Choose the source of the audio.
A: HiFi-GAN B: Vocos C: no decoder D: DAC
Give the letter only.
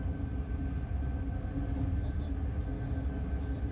C